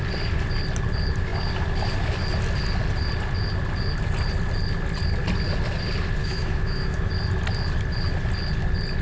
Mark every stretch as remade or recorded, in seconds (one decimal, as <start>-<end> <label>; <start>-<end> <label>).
0.0-6.2 recorded; 6.2-7.1 remade; 7.1-9.0 recorded